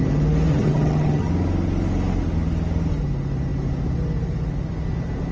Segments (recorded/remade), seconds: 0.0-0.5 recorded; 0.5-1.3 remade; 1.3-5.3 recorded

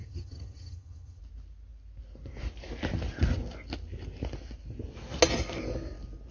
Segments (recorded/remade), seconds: 0.0-1.2 remade; 1.2-6.3 recorded